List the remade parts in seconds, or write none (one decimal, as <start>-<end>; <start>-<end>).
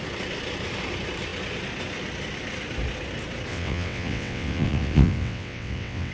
3.5-6.1